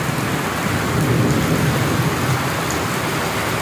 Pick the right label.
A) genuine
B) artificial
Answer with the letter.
A